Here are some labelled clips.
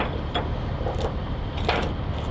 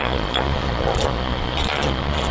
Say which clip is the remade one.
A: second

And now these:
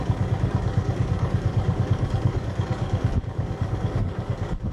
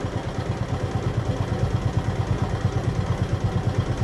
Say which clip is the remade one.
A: first